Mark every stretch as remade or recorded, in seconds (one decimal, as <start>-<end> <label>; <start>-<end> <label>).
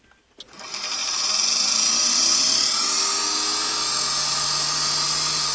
0.0-5.5 recorded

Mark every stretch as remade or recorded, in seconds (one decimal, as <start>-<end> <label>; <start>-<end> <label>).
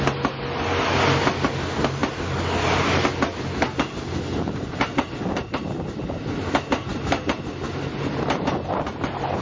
0.0-9.4 recorded